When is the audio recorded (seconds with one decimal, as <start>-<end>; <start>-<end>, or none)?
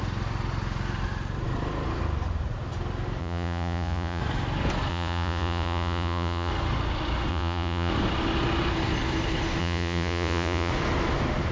0.0-3.2; 4.2-4.9; 6.5-7.3; 7.9-9.6; 10.7-11.5